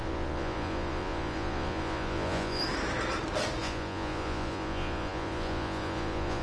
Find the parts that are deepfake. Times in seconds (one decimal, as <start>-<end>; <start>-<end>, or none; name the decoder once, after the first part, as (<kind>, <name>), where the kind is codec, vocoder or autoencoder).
0.0-2.6 (vocoder, Vocos); 3.6-6.4